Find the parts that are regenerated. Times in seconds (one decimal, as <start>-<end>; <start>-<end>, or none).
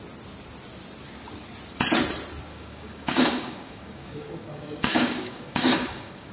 2.5-6.3